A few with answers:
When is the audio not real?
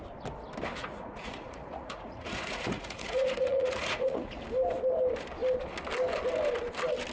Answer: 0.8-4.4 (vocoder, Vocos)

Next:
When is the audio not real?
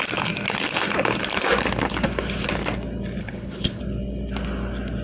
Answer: 3.2-3.8 (codec, HILCodec)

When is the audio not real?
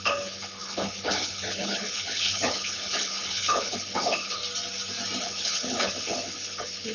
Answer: 0.0-4.4 (codec, HILCodec); 5.2-6.9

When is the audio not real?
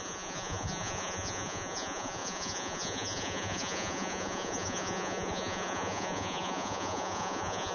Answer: 0.0-7.7 (vocoder, Vocos)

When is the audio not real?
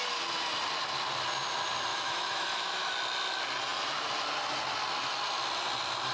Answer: 1.9-2.9 (autoencoder, DAC-VAE)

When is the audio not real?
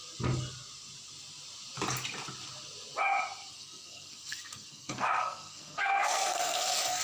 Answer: 3.5-7.0 (codec, SNAC)